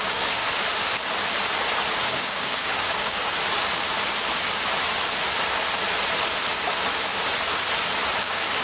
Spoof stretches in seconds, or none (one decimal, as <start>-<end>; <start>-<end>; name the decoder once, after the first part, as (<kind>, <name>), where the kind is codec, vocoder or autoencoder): 0.0-0.4 (codec, DAC); 2.0-3.2; 8.2-8.6